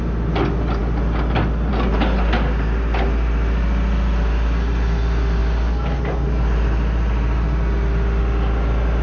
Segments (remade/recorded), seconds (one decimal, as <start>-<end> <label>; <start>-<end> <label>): 0.0-9.0 recorded